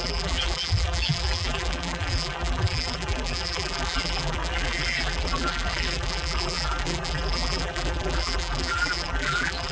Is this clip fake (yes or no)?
yes